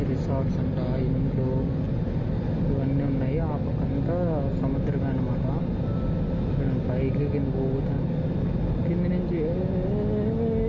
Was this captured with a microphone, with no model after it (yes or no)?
yes